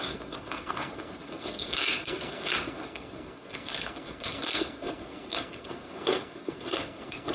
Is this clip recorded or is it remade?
remade